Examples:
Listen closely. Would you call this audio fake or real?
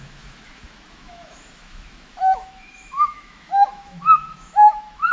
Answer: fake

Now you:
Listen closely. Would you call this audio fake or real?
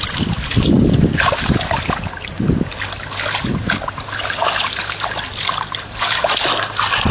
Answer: real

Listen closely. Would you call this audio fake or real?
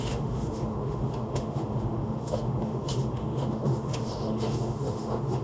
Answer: fake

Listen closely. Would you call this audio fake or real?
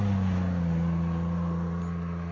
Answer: real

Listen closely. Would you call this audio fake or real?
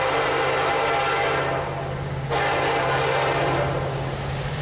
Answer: real